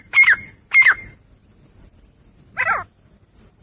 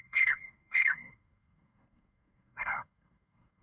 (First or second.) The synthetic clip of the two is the second